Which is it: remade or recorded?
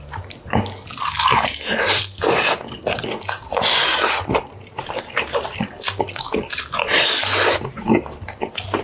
recorded